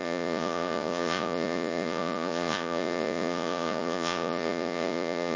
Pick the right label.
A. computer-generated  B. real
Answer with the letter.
A